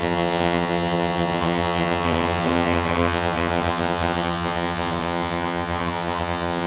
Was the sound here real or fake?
fake